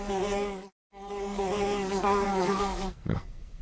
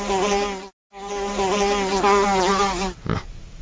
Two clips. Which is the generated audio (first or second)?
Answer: first